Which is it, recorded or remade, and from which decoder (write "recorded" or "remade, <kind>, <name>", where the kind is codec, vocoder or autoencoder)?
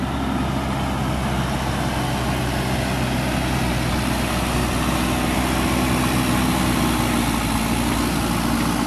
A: recorded